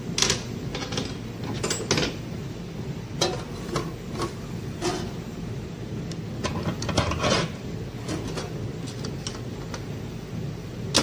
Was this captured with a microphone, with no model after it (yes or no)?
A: yes